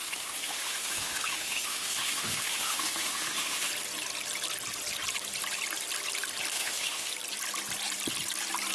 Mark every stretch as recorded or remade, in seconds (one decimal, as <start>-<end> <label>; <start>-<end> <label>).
0.0-3.7 remade; 3.7-6.5 recorded; 6.5-7.1 remade; 7.1-8.7 recorded